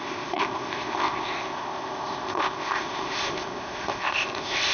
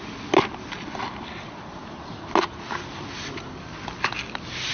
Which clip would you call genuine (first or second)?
second